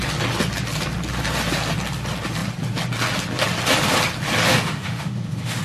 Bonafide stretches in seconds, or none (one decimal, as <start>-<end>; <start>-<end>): 0.0-4.6